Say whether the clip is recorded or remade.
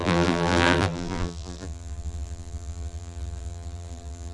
remade